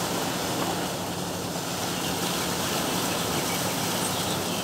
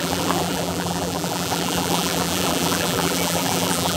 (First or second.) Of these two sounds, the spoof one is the second